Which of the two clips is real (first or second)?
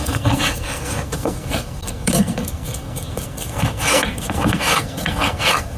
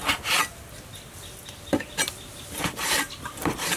second